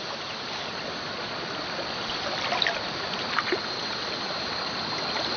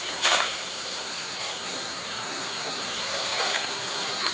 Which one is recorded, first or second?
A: first